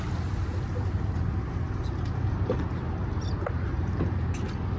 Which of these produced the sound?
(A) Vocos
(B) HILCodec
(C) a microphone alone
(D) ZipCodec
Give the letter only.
C